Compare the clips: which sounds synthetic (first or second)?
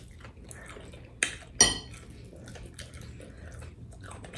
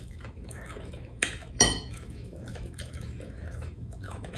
second